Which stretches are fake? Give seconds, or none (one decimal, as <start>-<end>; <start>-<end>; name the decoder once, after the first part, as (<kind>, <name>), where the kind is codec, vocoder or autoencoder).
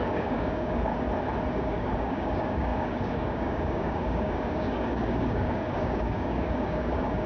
0.0-0.9 (codec, DAC); 1.5-7.3